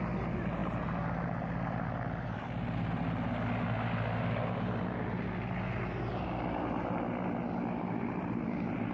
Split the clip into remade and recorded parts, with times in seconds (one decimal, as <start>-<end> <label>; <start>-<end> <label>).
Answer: 0.0-8.9 recorded